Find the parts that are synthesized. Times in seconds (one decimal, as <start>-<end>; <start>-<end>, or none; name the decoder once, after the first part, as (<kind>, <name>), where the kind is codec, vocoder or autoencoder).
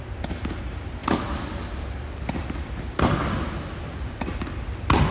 1.0-4.1 (vocoder, BigVGAN v2)